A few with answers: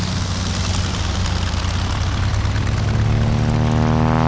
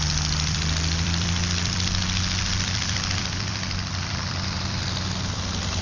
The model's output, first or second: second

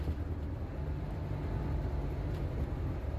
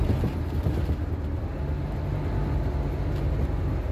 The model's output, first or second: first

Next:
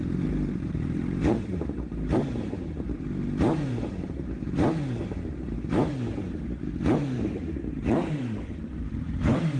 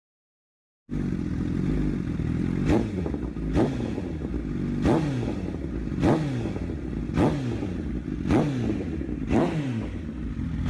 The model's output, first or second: first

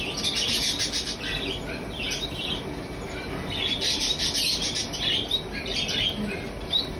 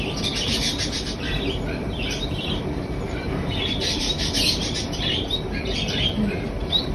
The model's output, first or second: second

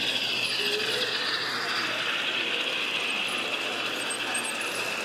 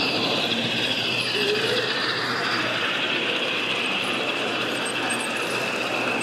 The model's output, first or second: second